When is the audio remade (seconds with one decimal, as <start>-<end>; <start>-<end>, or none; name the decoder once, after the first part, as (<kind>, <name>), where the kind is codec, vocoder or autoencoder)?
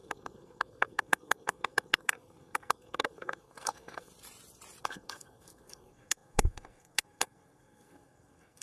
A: 0.0-4.1 (codec, SNAC); 4.8-8.6